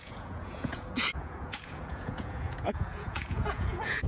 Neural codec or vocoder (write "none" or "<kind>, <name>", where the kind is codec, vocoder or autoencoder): vocoder, Vocos